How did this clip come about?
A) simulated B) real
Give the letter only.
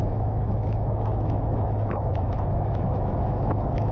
A